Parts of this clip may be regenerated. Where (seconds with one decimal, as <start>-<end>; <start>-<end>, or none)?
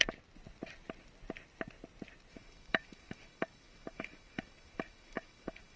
2.3-5.8